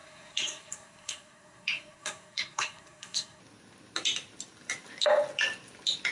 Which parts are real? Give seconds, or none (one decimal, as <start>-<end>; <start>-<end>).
3.4-6.1